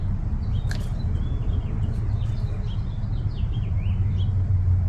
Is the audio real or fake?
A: real